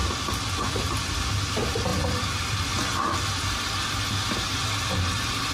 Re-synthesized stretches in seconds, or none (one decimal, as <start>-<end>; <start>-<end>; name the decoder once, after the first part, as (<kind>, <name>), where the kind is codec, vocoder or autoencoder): none